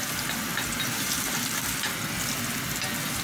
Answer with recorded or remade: recorded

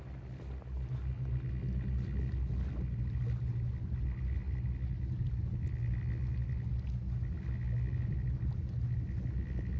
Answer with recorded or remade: recorded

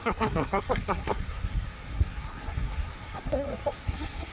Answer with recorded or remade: remade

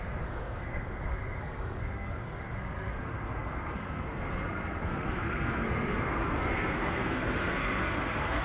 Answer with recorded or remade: remade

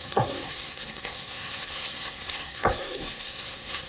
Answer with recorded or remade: remade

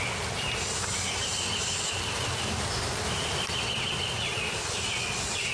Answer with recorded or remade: recorded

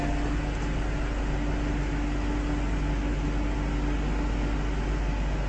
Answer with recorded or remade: recorded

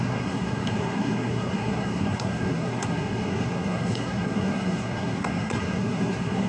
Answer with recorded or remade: remade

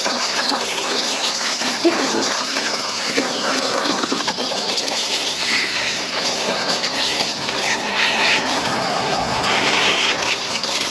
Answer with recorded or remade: remade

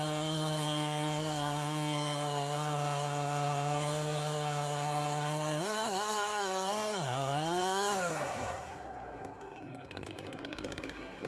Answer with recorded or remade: remade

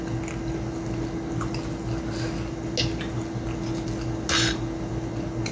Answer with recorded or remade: recorded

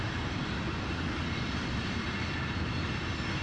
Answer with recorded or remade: recorded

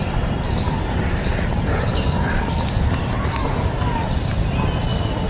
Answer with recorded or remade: recorded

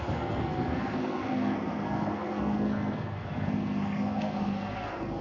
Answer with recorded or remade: remade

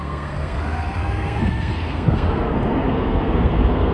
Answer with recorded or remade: remade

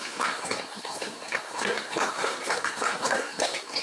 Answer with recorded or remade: remade